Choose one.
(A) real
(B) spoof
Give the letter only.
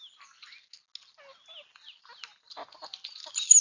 A